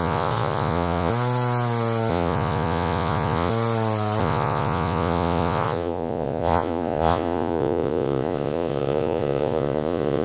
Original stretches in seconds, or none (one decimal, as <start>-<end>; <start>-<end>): 1.1-2.1; 3.5-4.2